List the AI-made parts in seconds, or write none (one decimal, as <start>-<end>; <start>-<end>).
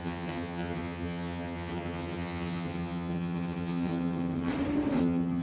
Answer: 0.0-4.5; 5.0-5.4